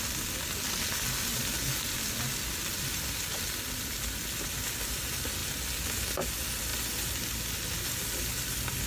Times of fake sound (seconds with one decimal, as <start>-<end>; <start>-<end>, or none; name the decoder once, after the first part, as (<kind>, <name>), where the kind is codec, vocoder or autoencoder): none